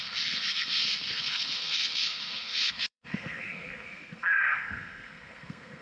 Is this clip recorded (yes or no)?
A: no